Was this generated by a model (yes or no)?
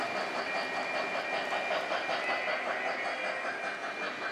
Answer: no